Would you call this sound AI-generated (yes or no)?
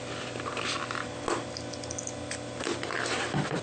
no